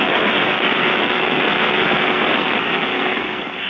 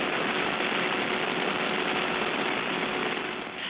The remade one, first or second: first